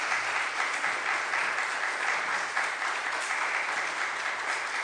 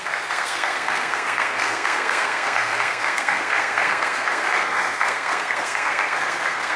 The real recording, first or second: first